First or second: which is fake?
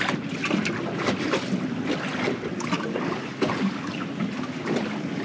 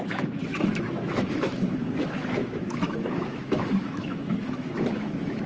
second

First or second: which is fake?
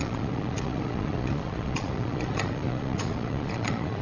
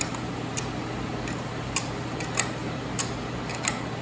first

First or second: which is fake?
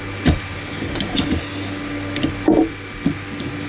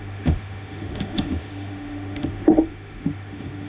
second